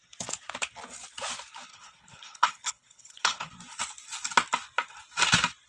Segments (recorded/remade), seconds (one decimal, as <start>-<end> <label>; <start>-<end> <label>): 0.0-1.7 recorded; 1.7-3.5 remade; 3.5-5.7 recorded